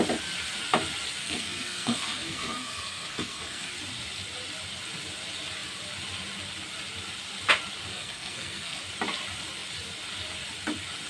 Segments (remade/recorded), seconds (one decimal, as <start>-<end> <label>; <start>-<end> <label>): 0.0-1.2 recorded; 1.2-3.7 remade; 3.7-7.9 recorded; 7.9-8.8 remade; 8.8-11.1 recorded